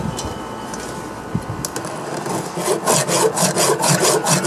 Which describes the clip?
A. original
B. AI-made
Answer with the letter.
A